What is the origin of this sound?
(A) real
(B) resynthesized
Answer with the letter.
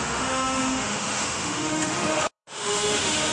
B